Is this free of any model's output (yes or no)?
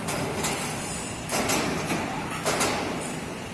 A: yes